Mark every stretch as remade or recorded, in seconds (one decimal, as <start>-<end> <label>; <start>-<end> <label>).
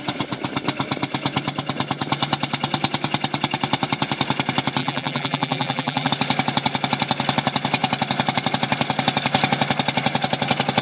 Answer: 0.0-4.8 recorded; 4.8-6.1 remade; 6.1-10.8 recorded